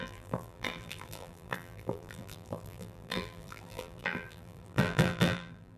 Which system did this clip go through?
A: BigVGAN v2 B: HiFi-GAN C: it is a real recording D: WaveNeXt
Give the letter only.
A